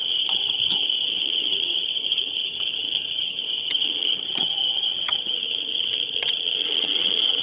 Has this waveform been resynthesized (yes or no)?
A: yes